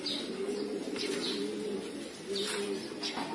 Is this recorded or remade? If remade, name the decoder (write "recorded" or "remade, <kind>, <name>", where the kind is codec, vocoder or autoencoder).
recorded